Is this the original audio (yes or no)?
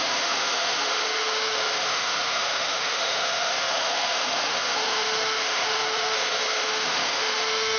no